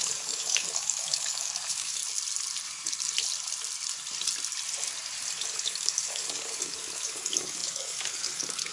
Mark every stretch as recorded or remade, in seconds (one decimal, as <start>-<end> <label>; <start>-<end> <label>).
0.0-2.0 remade; 2.0-5.6 recorded; 5.6-8.7 remade

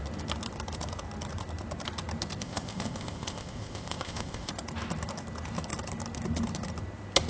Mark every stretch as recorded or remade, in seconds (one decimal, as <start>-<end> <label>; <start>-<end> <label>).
0.0-2.4 recorded; 2.4-4.5 remade; 4.5-7.3 recorded